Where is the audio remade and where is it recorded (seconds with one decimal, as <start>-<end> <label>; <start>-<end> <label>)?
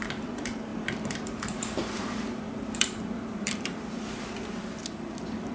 0.0-5.5 remade